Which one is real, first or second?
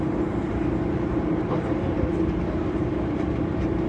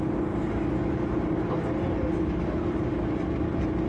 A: second